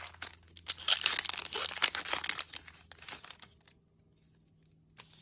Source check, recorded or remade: recorded